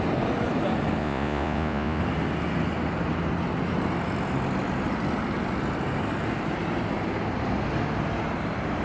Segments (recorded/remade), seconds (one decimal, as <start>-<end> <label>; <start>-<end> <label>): 0.0-1.0 recorded; 1.0-2.0 remade; 2.0-8.8 recorded